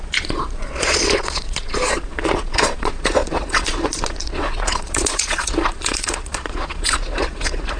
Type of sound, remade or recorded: remade